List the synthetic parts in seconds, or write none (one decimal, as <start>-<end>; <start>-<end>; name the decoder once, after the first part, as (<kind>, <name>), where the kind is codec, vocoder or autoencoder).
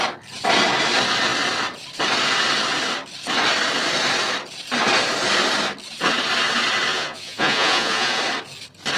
6.9-8.2 (vocoder, Vocos)